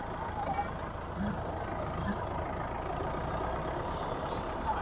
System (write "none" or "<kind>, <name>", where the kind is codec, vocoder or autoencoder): vocoder, BigVGAN v2